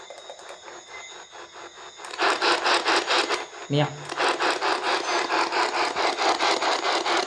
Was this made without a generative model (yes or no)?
yes